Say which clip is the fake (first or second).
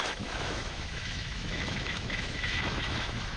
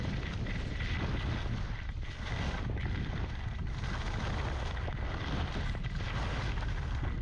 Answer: first